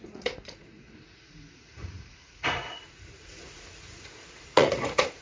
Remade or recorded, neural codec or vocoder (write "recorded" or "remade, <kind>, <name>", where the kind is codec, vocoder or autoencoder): remade, vocoder, Vocos